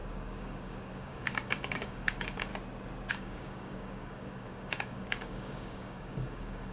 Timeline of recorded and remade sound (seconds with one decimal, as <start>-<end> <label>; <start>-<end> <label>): 0.0-2.5 remade; 2.5-3.1 recorded; 3.1-6.7 remade